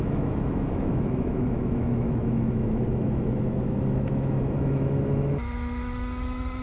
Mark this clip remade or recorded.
remade